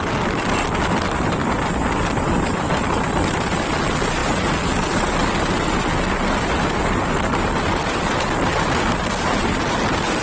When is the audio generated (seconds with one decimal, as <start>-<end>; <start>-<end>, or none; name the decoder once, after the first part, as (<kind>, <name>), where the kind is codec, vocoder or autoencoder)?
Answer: none